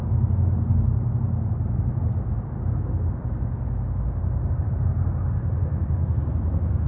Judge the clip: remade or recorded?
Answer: recorded